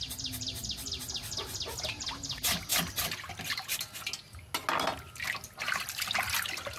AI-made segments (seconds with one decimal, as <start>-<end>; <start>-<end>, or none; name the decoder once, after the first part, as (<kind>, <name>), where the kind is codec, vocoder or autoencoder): none

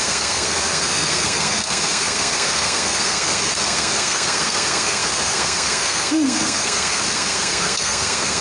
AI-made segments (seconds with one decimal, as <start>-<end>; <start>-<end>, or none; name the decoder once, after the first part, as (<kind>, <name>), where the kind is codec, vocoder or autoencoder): 0.0-8.4 (codec, SNAC)

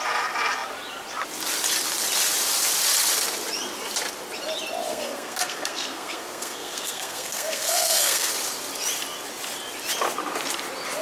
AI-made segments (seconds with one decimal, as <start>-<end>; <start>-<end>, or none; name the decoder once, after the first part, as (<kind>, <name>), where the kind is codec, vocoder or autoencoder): 4.9-8.3 (codec, SNAC)

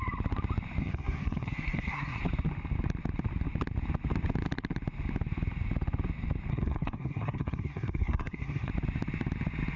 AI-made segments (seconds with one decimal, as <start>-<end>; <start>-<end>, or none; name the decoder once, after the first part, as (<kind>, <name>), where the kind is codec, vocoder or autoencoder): 0.8-2.2 (codec, SNAC); 6.5-8.7

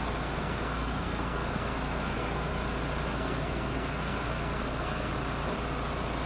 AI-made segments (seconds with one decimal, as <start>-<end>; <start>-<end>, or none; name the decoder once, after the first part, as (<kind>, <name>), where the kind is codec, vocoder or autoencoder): 0.0-2.5 (codec, SNAC); 3.1-5.1

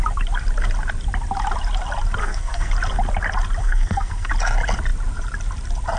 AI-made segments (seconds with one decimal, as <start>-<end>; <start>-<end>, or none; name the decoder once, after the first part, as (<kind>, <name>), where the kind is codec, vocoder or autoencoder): 2.2-2.7 (codec, SNAC); 3.6-4.3

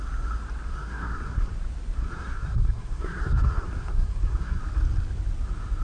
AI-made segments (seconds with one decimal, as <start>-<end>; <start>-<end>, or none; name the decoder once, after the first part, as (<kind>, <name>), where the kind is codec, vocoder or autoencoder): 0.7-1.5 (codec, SNAC); 2.0-4.6